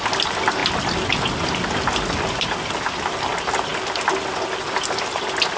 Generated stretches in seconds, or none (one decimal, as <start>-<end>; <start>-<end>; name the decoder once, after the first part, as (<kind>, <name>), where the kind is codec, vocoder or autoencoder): none